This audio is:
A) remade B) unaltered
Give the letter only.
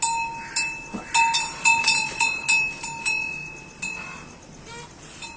B